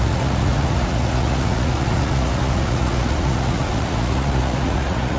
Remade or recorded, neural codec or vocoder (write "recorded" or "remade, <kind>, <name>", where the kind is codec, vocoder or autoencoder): remade, vocoder, Vocos